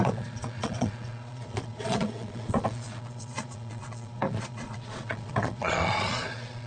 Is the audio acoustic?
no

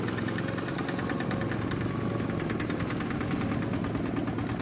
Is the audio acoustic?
yes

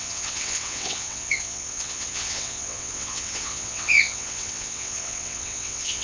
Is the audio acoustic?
no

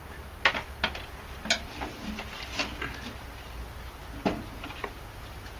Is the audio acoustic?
yes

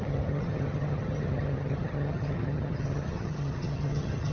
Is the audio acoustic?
no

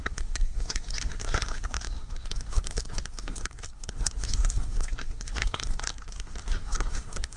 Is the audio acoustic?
no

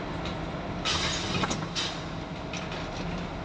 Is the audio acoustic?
yes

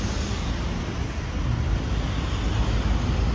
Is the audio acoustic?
yes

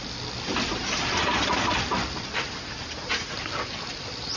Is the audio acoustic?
yes